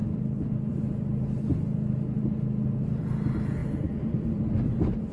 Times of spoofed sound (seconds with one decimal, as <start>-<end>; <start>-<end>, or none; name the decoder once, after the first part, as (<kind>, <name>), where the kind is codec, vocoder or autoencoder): 3.6-4.4 (vocoder, BigVGAN v2)